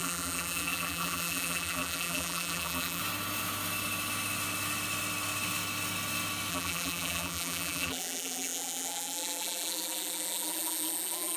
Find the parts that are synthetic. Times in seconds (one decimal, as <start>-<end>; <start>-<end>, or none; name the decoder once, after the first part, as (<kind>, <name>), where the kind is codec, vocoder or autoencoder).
0.0-3.0 (vocoder, BigVGAN v2); 6.5-11.4